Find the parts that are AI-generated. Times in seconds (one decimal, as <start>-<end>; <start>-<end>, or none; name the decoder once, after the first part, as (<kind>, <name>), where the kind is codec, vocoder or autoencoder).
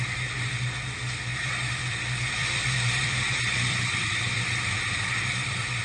1.3-2.0 (vocoder, BigVGAN v2); 2.4-5.8